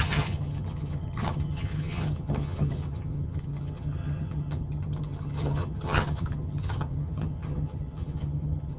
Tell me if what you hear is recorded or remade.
remade